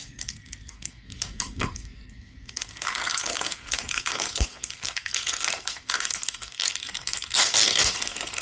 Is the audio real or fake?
fake